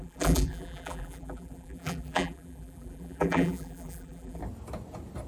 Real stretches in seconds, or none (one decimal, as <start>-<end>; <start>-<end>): 4.4-5.3